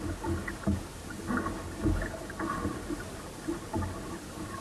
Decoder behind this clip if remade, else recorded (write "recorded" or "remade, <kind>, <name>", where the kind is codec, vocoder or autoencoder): recorded